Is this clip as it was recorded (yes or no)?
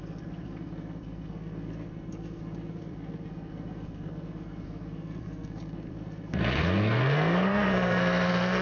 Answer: no